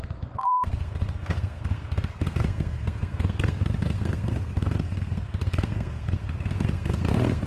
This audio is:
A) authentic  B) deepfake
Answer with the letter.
B